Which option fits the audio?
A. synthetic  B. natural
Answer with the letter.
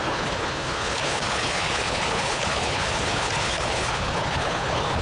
A